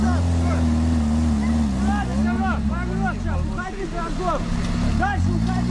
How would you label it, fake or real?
real